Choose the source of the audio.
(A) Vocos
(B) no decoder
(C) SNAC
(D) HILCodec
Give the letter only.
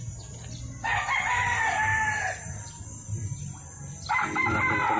B